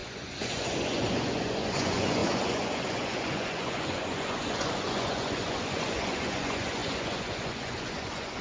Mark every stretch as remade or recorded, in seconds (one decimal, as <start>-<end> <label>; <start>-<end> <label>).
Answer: 0.0-8.4 remade